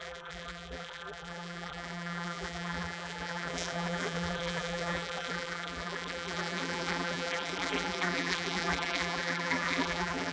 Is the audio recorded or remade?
remade